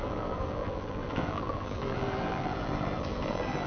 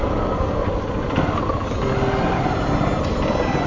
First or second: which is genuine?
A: second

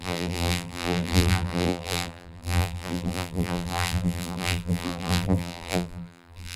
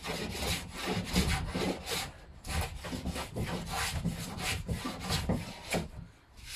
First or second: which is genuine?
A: second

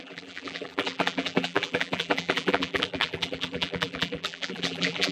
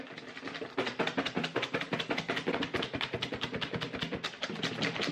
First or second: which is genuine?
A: second